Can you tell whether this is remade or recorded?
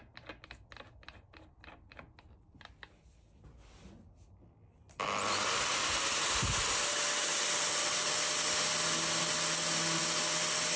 recorded